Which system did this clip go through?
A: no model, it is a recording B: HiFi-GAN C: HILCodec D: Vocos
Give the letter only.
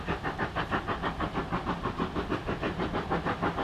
A